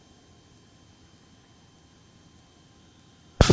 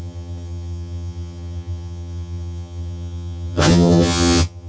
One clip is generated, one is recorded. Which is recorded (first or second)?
first